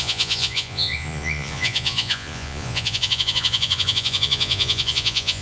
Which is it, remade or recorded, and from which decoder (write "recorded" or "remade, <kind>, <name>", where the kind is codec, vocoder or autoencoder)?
remade, vocoder, Vocos